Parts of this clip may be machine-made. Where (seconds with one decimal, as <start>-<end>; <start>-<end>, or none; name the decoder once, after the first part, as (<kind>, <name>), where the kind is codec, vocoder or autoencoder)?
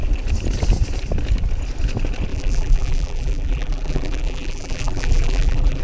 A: 2.3-5.8 (vocoder, BigVGAN v2)